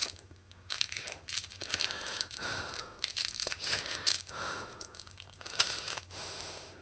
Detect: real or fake fake